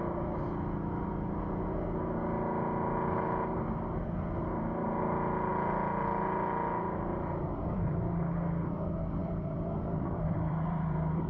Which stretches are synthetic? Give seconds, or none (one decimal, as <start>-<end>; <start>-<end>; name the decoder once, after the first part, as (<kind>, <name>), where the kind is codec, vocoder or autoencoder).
9.2-11.3 (vocoder, BigVGAN v2)